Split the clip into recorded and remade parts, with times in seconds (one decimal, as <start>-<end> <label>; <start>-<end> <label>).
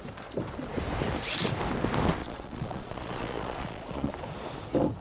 0.0-2.2 recorded; 2.2-4.1 remade; 4.1-5.0 recorded